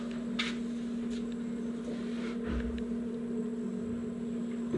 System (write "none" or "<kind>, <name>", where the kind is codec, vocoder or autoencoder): none